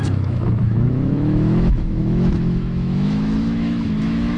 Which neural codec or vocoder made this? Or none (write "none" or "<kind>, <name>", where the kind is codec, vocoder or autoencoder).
autoencoder, DAC-VAE